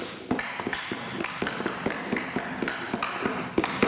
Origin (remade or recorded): recorded